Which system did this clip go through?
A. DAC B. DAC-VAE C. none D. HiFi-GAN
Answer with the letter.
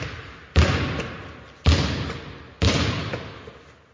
C